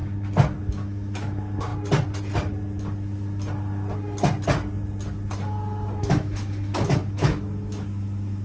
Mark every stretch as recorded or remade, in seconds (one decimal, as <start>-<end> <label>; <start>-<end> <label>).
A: 0.0-0.6 recorded; 0.6-1.7 remade; 1.7-6.0 recorded; 6.0-8.4 remade